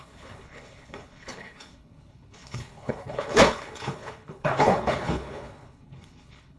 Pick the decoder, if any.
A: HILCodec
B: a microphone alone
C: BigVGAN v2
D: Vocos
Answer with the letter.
A